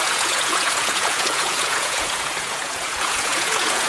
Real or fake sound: fake